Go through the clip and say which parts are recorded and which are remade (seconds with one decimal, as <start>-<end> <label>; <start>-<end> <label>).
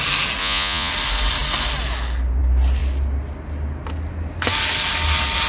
0.0-0.4 recorded; 0.4-0.9 remade; 0.9-5.5 recorded